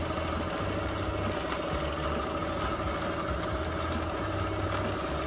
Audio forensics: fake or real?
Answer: real